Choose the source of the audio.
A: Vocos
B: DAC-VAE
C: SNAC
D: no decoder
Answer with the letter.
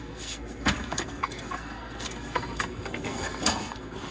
C